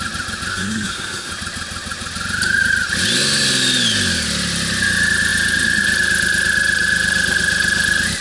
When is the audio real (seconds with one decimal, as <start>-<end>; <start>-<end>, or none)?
0.0-0.5; 1.3-8.2